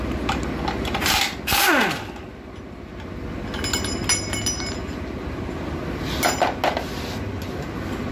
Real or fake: real